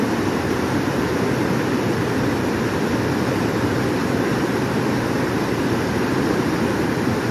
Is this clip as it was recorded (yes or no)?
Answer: no